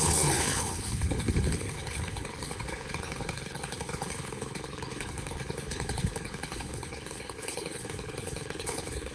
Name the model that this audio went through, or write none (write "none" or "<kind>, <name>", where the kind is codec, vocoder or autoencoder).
codec, HILCodec